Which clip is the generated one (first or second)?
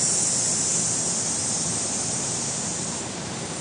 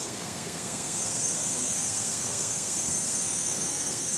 second